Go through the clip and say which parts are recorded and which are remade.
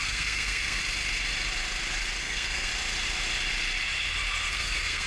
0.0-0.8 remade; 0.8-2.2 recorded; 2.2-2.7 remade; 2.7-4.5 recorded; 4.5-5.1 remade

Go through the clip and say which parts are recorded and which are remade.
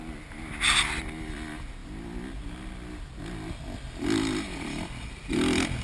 0.0-5.8 recorded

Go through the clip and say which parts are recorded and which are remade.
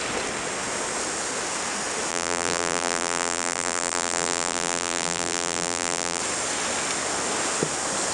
0.0-2.1 recorded; 2.1-6.2 remade; 6.2-8.1 recorded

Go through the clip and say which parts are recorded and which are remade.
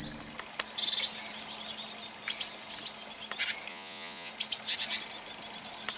0.0-3.7 recorded; 3.7-4.3 remade; 4.3-6.0 recorded